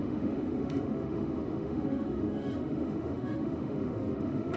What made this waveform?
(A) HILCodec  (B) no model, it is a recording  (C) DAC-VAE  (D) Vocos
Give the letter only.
C